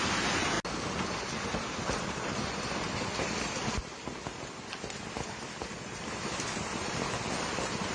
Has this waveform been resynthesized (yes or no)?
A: no